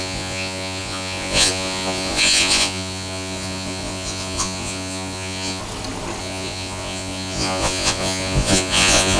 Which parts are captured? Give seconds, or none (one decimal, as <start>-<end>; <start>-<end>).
5.6-6.2